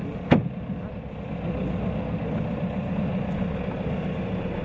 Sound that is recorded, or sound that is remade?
recorded